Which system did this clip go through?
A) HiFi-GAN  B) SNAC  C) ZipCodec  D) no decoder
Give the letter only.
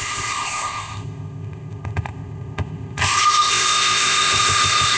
C